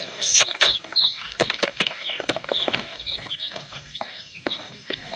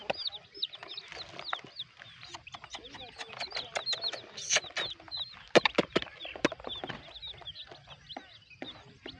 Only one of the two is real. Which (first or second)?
second